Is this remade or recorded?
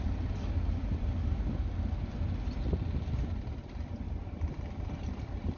recorded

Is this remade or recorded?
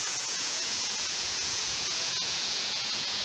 remade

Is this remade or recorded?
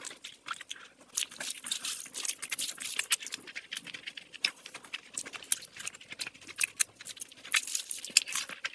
recorded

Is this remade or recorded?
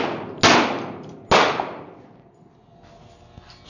recorded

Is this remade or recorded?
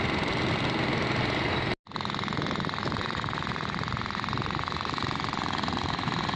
recorded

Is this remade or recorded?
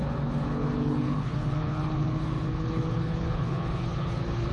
remade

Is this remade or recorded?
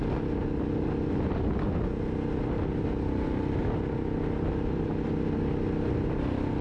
recorded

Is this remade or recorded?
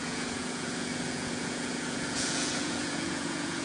remade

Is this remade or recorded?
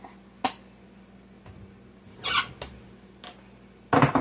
recorded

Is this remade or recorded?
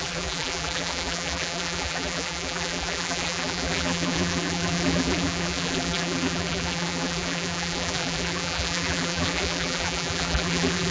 remade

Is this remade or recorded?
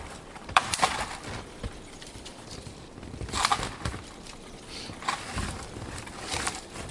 remade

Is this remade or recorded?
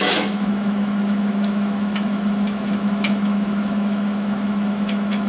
remade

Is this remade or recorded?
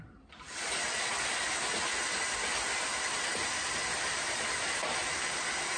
recorded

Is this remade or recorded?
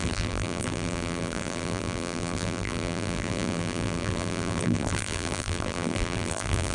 remade